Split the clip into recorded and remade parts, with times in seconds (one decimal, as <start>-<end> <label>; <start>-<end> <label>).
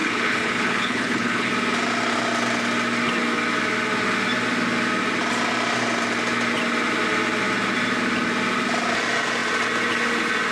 0.0-1.5 remade; 1.5-10.5 recorded